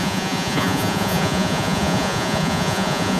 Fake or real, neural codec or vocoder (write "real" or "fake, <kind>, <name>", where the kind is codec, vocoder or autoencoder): fake, vocoder, Vocos